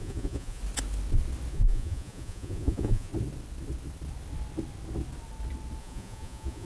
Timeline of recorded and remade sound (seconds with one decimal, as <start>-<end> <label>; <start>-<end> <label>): 0.0-0.6 remade; 0.6-1.5 recorded; 1.5-3.1 remade; 3.1-5.8 recorded; 5.8-6.6 remade

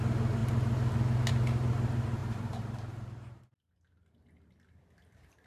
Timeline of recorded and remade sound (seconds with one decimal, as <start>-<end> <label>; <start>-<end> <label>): 0.0-2.2 recorded; 2.2-3.4 remade; 3.4-5.5 recorded